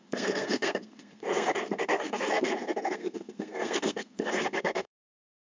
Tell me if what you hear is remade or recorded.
remade